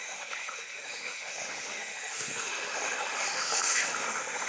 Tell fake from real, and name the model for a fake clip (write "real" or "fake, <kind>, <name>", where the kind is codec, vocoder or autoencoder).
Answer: fake, autoencoder, DAC-VAE